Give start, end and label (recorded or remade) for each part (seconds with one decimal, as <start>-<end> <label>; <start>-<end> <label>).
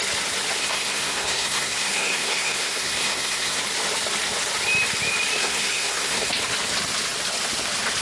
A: 0.0-0.6 recorded; 0.6-3.6 remade; 3.6-5.4 recorded; 5.4-6.3 remade; 6.3-8.0 recorded